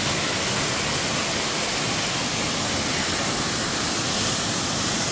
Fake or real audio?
real